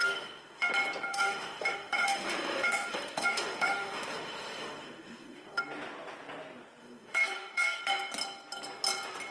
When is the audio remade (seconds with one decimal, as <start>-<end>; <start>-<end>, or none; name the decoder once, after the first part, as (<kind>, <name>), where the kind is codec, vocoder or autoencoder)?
0.0-0.7 (autoencoder, DAC-VAE); 1.1-5.6; 6.8-7.8